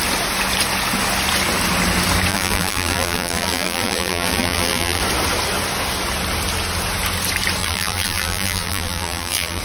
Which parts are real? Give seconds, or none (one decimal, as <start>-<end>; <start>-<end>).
0.0-2.3; 5.0-7.6